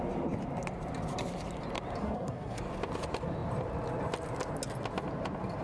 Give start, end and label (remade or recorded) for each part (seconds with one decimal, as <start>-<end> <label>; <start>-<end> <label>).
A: 0.0-2.0 recorded; 2.0-2.6 remade; 2.6-5.6 recorded